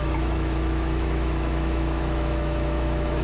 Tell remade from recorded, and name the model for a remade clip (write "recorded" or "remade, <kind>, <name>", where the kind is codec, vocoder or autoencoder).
remade, autoencoder, DAC-VAE